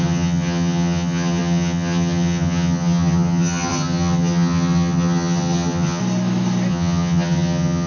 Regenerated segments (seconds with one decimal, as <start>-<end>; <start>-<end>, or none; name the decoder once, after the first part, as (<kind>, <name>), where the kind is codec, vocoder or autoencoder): 0.0-6.0 (vocoder, HiFi-GAN); 6.7-7.9

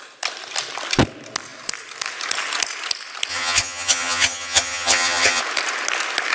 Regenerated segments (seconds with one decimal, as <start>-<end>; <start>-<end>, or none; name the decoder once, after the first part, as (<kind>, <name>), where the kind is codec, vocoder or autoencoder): 3.3-5.4 (vocoder, HiFi-GAN)